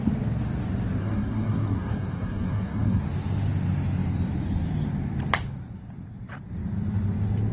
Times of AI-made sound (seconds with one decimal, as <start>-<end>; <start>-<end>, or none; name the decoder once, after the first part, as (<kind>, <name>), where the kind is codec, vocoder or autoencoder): 1.0-3.0 (codec, SNAC)